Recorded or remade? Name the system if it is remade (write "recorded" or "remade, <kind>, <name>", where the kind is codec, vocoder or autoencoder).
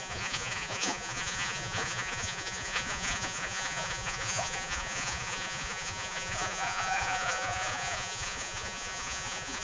remade, vocoder, Vocos